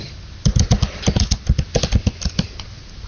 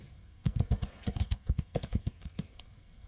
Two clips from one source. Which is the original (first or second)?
first